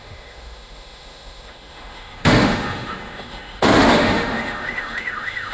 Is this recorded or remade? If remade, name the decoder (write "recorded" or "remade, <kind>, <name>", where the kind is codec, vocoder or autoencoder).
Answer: remade, autoencoder, DAC-VAE